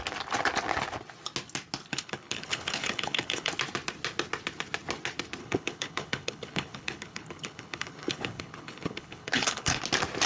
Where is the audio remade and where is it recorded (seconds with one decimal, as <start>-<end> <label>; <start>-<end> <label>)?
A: 0.0-1.9 recorded; 1.9-3.5 remade; 3.5-5.4 recorded; 5.4-9.8 remade; 9.8-10.3 recorded